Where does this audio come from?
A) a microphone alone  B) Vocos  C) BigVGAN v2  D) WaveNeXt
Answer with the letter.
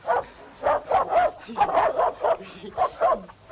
A